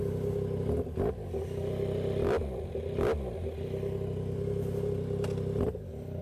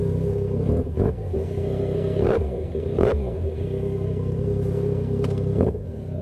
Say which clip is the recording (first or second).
first